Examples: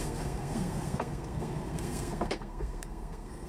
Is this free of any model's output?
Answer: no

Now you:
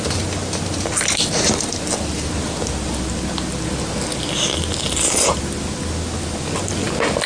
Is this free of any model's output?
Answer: yes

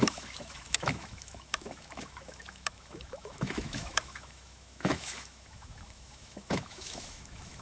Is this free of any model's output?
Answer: no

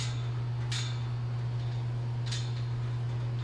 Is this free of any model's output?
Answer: yes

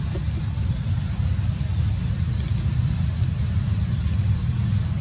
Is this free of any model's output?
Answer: yes